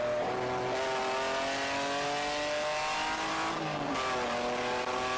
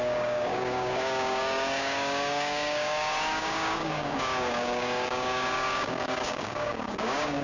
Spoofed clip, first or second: second